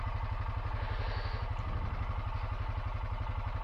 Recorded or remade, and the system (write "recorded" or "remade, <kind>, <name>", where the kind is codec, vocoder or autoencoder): recorded